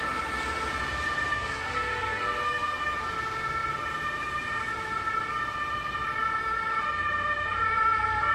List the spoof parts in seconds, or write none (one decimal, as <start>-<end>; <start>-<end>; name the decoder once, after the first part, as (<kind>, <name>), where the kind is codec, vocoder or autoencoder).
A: 1.3-2.8 (codec, SNAC)